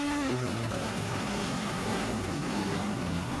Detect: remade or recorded remade